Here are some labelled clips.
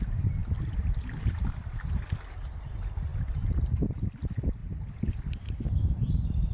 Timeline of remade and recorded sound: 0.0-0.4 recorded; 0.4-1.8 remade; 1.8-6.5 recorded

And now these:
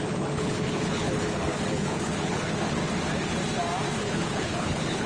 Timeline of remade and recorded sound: 0.0-2.8 remade; 2.8-4.0 recorded; 4.0-5.1 remade

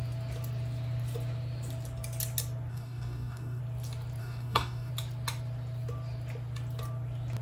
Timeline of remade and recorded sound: 0.0-2.7 recorded; 2.7-3.6 remade; 3.6-4.2 recorded; 4.2-4.9 remade; 4.9-7.4 recorded